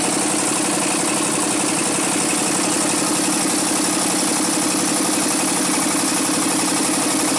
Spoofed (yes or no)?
no